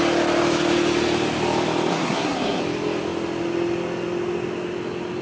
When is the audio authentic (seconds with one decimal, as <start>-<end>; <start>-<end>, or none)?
0.0-1.9; 2.6-5.2